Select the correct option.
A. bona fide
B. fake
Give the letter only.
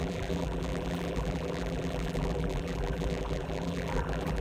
B